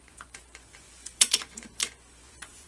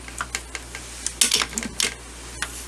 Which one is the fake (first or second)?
first